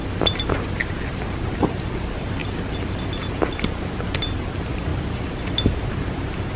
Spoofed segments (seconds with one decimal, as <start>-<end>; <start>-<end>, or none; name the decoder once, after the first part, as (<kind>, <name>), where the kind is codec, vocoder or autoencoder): 4.9-6.0 (vocoder, BigVGAN v2)